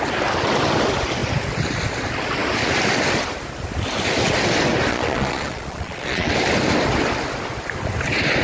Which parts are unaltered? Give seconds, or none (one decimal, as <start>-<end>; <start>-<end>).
0.0-4.9; 6.3-8.4